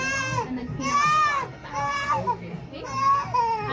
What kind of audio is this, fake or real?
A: real